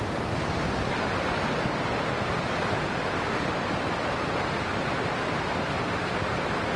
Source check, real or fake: fake